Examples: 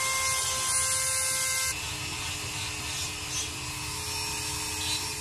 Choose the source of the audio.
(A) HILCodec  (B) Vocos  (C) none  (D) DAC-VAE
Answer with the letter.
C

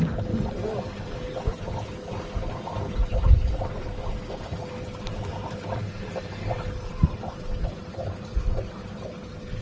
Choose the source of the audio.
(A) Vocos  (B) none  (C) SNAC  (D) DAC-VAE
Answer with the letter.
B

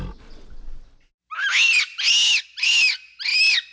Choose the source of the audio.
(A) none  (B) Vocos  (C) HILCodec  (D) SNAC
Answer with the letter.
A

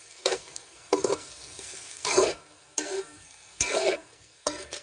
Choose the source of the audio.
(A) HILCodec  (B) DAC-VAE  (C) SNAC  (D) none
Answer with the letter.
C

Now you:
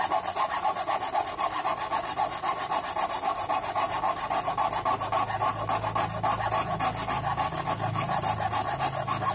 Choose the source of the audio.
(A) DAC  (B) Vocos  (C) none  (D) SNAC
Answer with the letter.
C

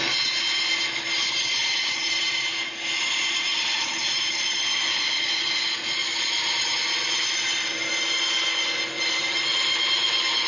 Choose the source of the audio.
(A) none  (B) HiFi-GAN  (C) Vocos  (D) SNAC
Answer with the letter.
A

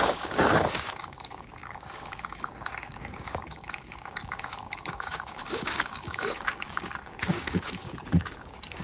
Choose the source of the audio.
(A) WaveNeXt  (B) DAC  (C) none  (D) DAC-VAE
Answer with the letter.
B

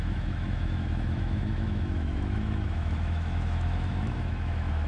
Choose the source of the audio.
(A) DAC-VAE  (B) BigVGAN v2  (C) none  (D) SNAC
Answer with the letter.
A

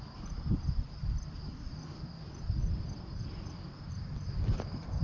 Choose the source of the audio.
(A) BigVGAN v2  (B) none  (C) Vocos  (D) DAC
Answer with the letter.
B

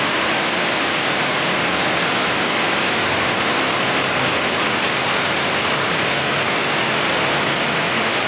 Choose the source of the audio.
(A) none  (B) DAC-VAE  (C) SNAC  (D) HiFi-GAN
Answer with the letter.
A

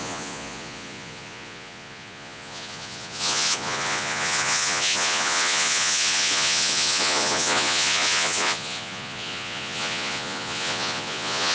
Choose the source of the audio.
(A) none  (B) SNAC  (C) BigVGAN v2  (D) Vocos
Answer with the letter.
D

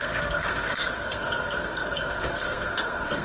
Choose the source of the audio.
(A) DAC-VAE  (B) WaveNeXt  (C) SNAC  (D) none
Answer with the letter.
C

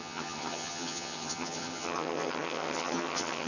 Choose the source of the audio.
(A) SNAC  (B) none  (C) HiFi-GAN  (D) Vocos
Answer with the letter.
C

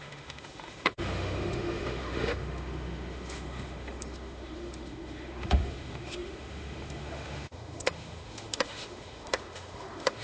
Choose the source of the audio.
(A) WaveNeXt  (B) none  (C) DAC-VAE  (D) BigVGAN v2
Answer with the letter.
C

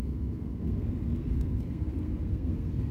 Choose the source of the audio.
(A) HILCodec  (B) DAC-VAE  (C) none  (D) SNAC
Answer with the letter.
D